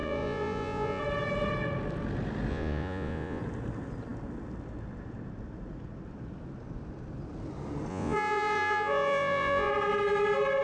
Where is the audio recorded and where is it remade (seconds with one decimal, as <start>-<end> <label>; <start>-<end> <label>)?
0.0-1.0 remade; 1.0-2.5 recorded; 2.5-3.4 remade; 3.4-7.9 recorded; 7.9-9.7 remade; 9.7-10.6 recorded

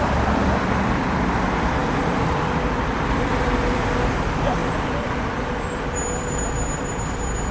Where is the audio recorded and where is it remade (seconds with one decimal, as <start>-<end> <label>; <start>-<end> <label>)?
0.0-7.5 remade

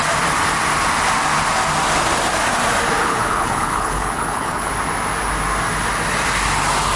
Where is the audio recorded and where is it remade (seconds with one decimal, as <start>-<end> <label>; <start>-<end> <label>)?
0.0-3.0 recorded; 3.0-4.7 remade; 4.7-7.0 recorded

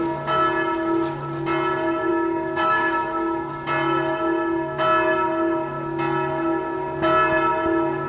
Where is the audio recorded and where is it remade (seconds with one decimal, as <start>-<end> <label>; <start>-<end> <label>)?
0.0-2.1 recorded; 2.1-3.5 remade; 3.5-8.1 recorded

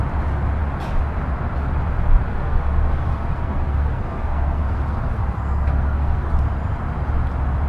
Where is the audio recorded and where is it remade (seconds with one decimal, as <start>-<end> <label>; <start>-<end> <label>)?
0.0-2.3 recorded; 2.3-6.3 remade; 6.3-7.7 recorded